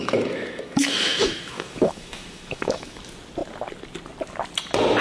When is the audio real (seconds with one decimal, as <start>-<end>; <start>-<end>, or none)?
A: 3.0-5.0